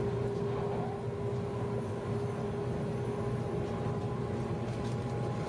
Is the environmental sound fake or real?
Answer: real